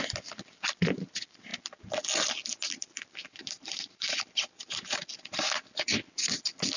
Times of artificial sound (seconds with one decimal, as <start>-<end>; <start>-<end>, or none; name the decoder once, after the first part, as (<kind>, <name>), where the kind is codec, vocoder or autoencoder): 3.2-5.4 (vocoder, BigVGAN v2)